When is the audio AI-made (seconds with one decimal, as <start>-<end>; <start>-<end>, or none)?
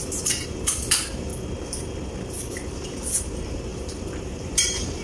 0.0-1.3; 3.2-5.0